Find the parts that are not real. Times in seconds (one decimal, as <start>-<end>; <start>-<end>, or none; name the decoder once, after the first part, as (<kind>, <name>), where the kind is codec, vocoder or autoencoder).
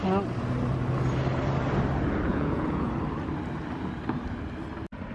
2.3-2.9 (vocoder, Vocos)